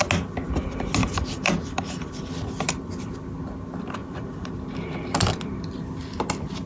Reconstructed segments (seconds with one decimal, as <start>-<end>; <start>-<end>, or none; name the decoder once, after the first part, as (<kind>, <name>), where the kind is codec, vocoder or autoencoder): 1.0-2.1 (vocoder, BigVGAN v2); 4.0-4.5